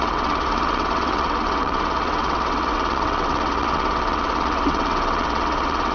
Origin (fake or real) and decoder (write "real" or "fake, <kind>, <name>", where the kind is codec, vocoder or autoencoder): fake, vocoder, WaveNeXt